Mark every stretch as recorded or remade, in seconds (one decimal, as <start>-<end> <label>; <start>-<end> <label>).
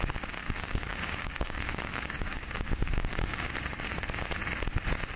0.0-0.4 recorded; 0.4-3.5 remade; 3.5-5.2 recorded